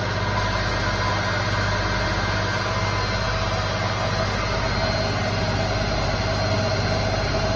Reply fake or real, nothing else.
real